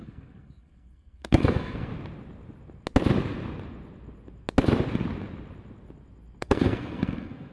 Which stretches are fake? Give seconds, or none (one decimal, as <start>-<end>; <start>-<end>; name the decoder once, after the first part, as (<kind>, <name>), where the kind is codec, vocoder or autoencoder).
0.0-1.9 (codec, SNAC); 6.4-7.5